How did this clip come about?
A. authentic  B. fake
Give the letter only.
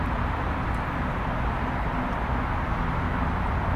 A